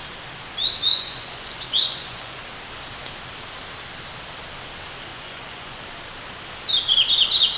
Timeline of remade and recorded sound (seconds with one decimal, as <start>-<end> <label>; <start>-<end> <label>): 0.0-0.9 recorded; 0.9-2.4 remade; 2.4-5.1 recorded; 5.1-5.8 remade; 5.8-7.6 recorded